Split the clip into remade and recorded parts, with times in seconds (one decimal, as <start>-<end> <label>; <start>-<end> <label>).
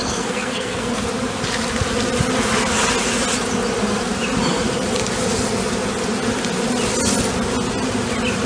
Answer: 0.0-1.0 remade; 1.0-8.5 recorded